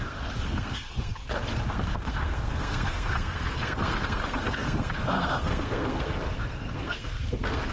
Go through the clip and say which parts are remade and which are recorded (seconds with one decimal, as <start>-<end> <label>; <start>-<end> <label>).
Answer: 0.0-1.1 remade; 1.1-1.7 recorded; 1.7-7.7 remade